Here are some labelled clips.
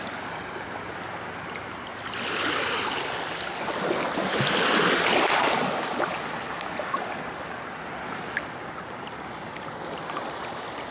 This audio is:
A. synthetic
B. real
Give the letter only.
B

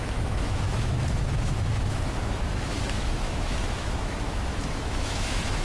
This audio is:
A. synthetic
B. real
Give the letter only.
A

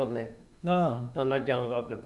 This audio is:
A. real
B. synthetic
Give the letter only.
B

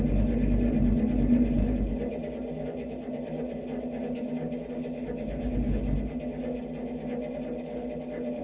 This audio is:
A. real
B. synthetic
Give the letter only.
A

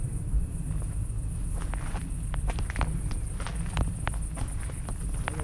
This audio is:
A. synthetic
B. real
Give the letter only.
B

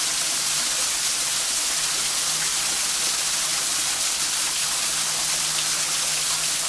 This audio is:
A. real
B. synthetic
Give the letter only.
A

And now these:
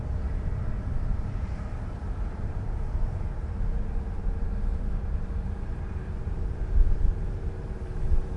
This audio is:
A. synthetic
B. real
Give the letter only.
A